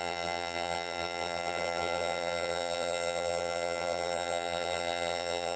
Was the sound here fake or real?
fake